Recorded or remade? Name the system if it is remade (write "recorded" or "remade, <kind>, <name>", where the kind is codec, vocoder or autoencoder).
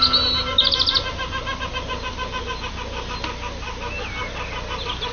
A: recorded